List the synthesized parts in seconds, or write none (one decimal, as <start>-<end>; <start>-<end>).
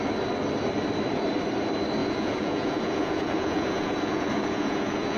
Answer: 2.0-5.2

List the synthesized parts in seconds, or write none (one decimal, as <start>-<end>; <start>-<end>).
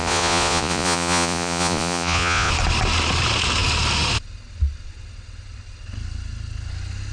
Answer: 0.0-2.5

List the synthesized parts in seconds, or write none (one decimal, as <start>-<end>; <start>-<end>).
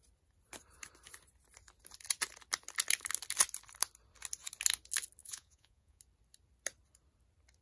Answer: 5.2-6.0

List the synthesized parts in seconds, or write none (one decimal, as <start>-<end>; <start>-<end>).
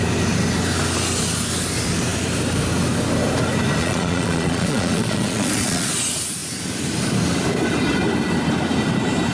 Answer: 3.8-5.9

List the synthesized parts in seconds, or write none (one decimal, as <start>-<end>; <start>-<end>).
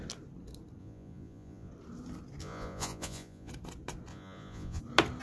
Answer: 0.8-1.7; 2.4-3.5; 4.1-4.8